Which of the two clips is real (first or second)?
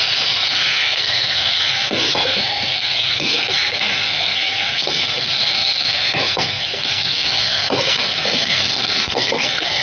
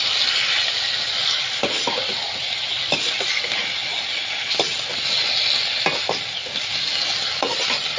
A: second